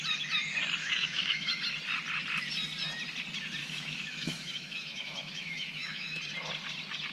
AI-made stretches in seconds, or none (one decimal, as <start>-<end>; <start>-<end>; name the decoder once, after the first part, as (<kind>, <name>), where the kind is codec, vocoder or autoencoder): 0.8-1.6 (autoencoder, DAC-VAE); 3.6-6.2